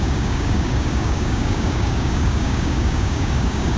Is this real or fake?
fake